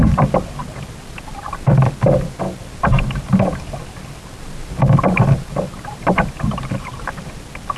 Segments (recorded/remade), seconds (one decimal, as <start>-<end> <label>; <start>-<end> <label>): 0.0-5.7 recorded; 5.7-7.1 remade; 7.1-7.8 recorded